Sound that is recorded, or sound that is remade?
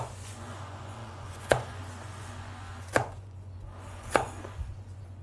remade